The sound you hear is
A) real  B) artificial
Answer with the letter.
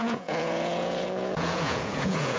B